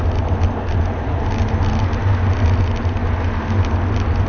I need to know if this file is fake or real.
real